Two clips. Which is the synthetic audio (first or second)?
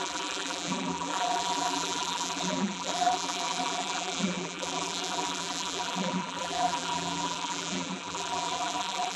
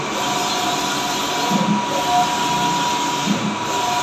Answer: first